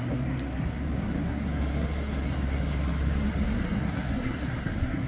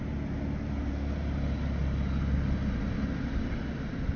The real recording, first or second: second